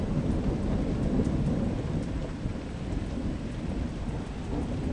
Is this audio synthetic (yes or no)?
yes